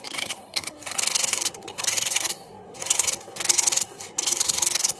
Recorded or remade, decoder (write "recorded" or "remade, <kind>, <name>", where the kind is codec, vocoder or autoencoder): remade, codec, SNAC